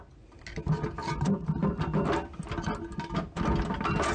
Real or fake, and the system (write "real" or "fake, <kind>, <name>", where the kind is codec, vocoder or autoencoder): real